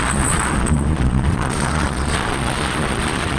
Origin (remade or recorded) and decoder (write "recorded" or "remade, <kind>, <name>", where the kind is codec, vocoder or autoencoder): remade, vocoder, Vocos